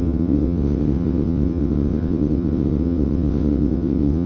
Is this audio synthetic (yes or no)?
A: yes